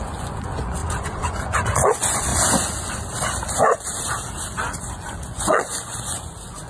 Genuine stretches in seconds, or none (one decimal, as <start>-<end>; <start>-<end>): 2.3-4.8